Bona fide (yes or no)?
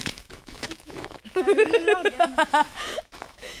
no